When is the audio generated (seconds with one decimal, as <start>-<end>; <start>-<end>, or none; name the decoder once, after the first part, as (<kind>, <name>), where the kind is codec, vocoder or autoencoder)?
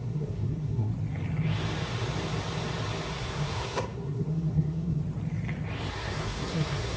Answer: 0.0-0.9 (codec, SNAC); 3.1-5.0; 5.9-7.0